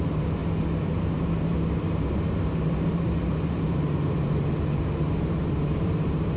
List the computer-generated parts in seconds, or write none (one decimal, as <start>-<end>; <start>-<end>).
0.0-0.4; 1.1-6.4